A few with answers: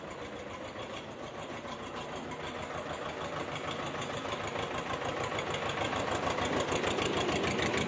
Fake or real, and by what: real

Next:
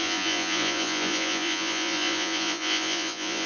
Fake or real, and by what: fake, vocoder, Vocos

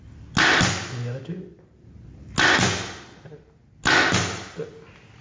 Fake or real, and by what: real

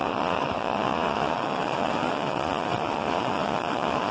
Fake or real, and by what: fake, vocoder, Vocos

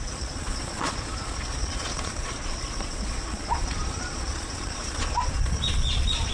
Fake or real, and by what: fake, vocoder, Vocos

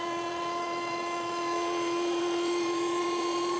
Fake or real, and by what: fake, vocoder, Vocos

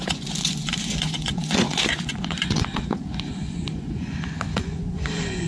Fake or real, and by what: fake, vocoder, Vocos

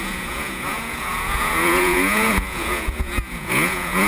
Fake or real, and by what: fake, vocoder, Vocos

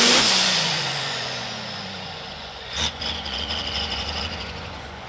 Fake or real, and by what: fake, vocoder, Vocos